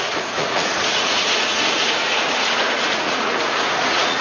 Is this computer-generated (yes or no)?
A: yes